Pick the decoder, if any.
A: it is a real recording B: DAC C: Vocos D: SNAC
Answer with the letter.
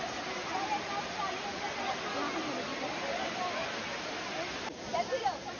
A